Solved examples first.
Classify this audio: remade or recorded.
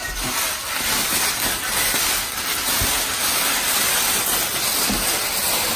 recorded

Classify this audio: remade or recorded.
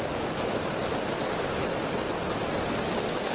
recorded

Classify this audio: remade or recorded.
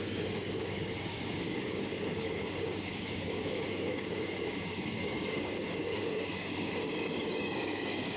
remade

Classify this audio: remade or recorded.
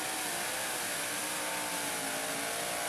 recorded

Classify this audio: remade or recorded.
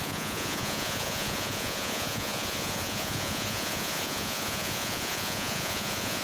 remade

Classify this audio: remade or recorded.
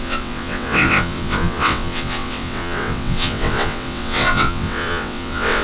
remade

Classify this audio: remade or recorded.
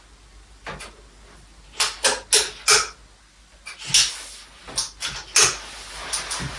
recorded